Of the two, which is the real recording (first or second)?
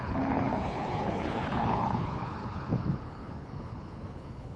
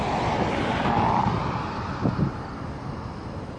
second